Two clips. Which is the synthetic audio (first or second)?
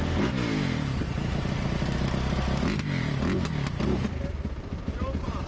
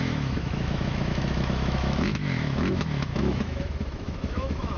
second